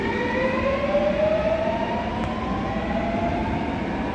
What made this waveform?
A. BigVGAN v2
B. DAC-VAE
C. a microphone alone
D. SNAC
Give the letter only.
C